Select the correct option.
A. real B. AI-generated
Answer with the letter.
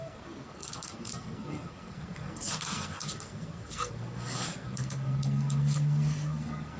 B